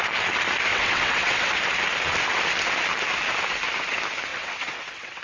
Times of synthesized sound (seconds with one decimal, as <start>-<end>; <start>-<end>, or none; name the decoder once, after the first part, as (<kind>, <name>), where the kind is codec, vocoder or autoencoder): 0.7-1.5 (vocoder, WaveNeXt); 4.3-5.2